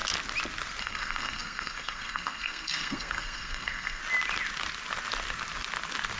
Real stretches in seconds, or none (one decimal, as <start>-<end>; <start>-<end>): 0.0-0.8; 4.0-6.2